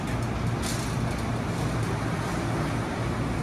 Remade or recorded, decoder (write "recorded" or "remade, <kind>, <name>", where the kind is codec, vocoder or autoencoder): recorded